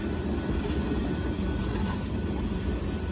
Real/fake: real